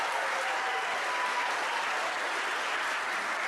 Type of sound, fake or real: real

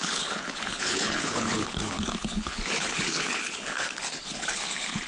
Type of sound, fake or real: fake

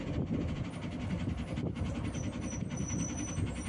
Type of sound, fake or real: real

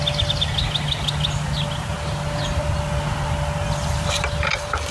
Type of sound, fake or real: real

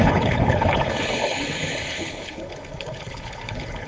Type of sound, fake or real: fake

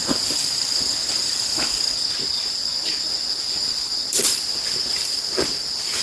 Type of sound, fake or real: real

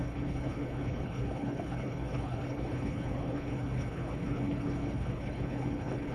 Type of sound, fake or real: fake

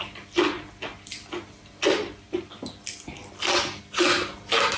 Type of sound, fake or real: real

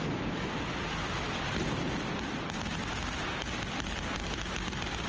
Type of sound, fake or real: real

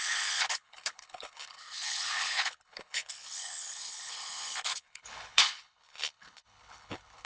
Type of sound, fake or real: fake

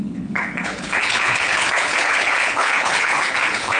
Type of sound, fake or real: fake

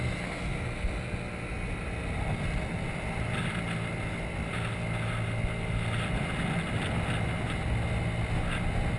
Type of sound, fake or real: real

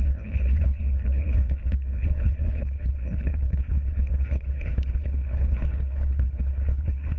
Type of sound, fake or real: fake